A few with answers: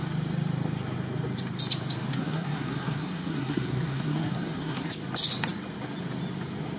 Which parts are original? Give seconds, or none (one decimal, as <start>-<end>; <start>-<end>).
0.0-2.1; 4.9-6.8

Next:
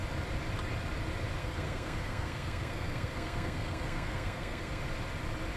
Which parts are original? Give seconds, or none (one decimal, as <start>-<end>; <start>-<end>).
0.0-1.4; 4.8-5.6

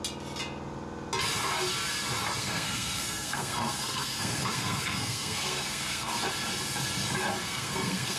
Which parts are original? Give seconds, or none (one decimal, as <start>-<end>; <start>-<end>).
0.0-2.4; 6.2-7.4